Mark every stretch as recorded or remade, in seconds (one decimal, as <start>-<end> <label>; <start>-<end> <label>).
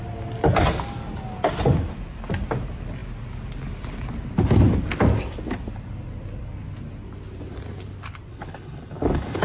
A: 0.0-8.3 recorded; 8.3-9.4 remade